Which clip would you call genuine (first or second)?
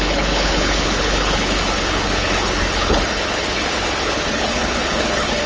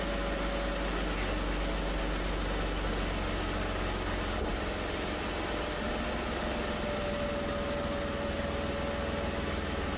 second